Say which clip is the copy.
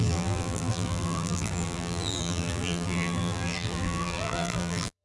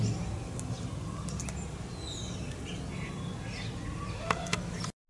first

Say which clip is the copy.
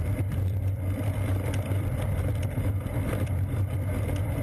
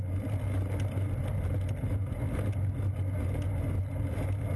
first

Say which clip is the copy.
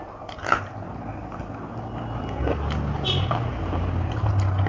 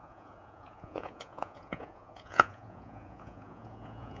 second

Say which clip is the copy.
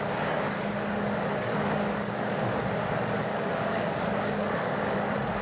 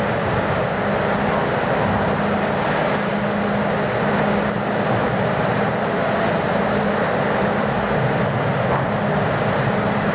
first